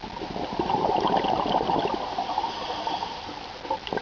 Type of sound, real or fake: real